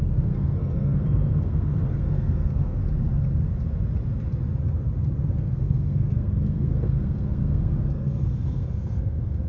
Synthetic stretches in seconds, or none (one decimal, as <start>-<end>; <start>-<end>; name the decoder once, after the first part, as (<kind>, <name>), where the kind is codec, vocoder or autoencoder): 0.0-2.8 (codec, SNAC); 5.3-9.5